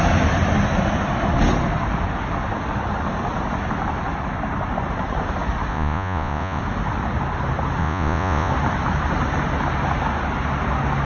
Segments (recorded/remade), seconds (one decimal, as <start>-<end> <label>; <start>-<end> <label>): 0.0-5.7 recorded; 5.7-6.6 remade; 6.6-7.8 recorded; 7.8-8.5 remade; 8.5-11.0 recorded